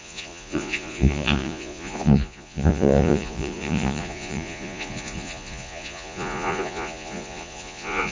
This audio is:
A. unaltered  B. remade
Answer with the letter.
B